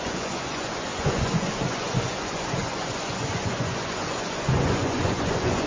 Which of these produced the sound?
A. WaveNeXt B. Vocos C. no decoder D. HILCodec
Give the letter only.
B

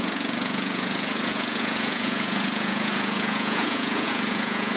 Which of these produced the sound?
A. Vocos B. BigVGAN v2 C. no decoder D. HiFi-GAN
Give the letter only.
A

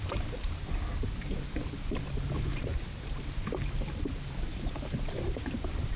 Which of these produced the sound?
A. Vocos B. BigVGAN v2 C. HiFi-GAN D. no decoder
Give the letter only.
D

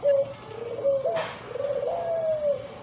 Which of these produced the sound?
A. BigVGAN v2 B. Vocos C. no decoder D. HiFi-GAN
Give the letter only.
C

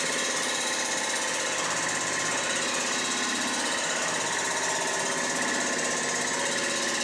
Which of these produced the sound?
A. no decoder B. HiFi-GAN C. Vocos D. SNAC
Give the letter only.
A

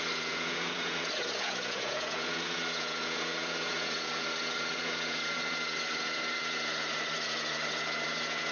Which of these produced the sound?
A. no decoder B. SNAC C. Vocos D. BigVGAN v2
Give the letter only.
C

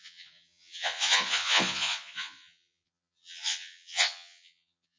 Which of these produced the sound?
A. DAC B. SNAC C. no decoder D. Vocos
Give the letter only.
D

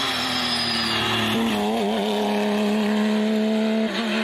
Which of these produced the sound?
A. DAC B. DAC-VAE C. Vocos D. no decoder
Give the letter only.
D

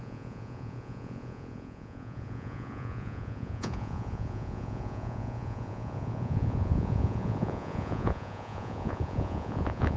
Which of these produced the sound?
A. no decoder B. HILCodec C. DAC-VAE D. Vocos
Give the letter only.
D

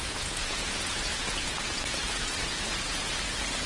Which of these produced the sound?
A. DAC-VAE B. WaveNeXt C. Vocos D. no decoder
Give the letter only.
C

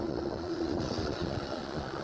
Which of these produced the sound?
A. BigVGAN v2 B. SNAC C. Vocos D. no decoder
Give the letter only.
C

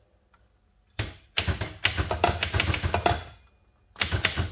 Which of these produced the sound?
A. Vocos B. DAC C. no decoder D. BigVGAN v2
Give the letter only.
C